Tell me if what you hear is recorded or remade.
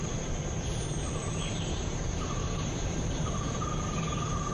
remade